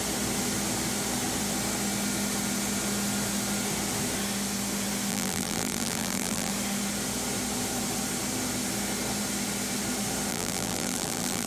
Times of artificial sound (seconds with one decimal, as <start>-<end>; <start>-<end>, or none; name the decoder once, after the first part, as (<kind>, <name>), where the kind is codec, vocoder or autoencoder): 5.1-6.5 (vocoder, BigVGAN v2); 10.3-11.5